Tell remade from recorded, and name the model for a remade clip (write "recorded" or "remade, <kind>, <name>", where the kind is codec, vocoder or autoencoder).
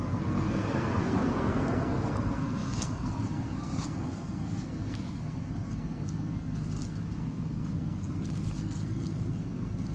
remade, codec, SNAC